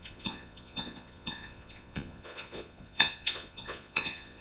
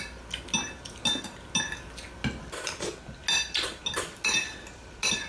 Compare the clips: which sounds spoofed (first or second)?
first